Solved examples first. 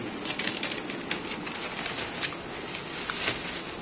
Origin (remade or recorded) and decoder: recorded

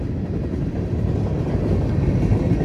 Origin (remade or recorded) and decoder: recorded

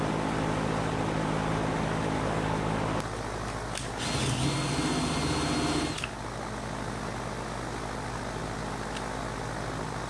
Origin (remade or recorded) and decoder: recorded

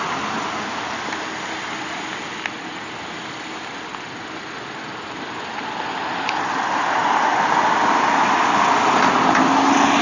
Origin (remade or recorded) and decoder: recorded